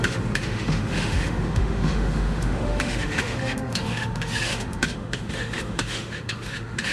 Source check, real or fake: fake